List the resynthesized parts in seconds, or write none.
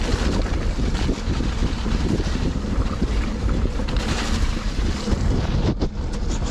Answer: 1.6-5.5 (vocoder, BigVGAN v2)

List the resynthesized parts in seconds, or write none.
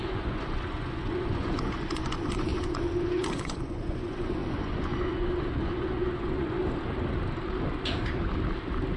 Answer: 0.0-6.6 (vocoder, Vocos)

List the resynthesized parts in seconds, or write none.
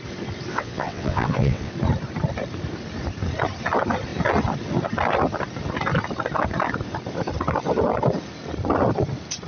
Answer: 0.5-1.7 (vocoder, WaveNeXt)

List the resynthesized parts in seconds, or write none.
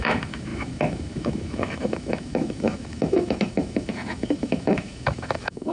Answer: 0.0-5.7 (autoencoder, DAC-VAE)